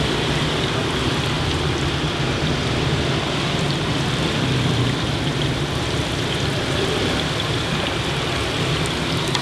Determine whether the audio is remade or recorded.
remade